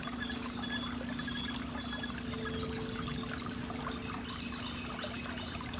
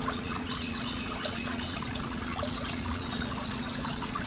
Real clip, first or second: first